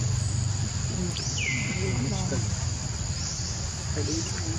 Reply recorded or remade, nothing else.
recorded